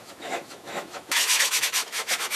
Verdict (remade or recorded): remade